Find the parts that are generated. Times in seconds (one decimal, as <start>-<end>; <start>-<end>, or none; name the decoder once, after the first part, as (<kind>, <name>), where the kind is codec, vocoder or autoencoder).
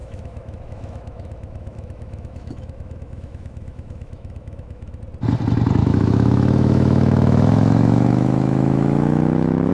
0.0-5.0 (autoencoder, DAC-VAE); 5.8-9.7